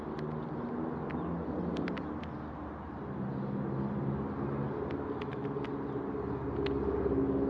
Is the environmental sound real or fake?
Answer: real